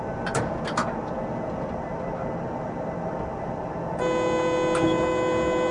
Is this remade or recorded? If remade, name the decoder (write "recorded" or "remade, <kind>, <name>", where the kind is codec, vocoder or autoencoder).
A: recorded